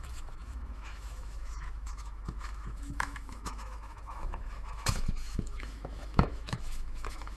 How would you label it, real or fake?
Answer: fake